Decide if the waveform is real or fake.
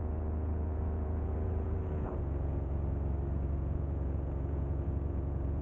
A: fake